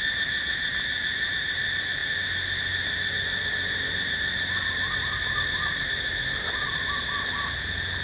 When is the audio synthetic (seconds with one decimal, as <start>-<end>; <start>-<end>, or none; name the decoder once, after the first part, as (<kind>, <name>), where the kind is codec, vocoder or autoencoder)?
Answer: none